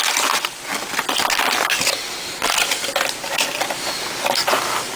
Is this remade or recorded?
recorded